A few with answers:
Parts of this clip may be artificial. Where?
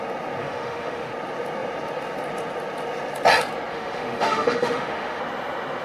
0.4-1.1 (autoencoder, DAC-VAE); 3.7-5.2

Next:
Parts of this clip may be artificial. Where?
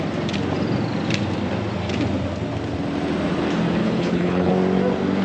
3.8-4.5 (codec, HILCodec)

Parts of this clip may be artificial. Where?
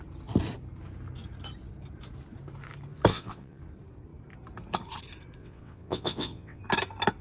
3.1-3.6 (vocoder, WaveNeXt); 5.4-6.6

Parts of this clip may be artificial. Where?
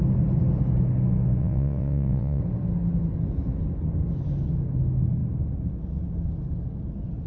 1.4-2.4 (vocoder, WaveNeXt)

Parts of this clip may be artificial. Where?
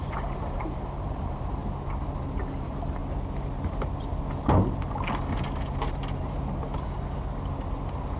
0.0-1.6 (vocoder, BigVGAN v2); 2.4-3.0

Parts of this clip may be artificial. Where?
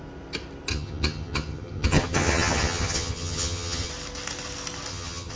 0.7-3.9 (vocoder, HiFi-GAN); 4.9-5.4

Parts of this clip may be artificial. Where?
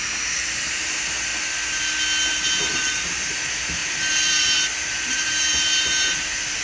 0.0-1.3 (vocoder, BigVGAN v2); 2.6-6.6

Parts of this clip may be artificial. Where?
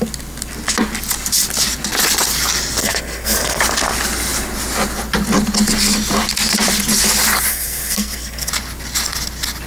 2.8-3.6 (codec, SNAC); 7.5-8.5